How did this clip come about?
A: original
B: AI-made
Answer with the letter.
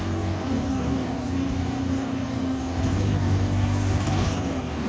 B